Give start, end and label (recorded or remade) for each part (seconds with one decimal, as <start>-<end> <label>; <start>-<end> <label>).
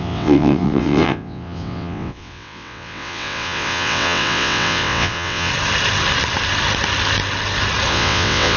0.0-5.5 remade; 5.5-7.9 recorded; 7.9-8.6 remade